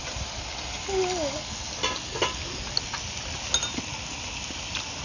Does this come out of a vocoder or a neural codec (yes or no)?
no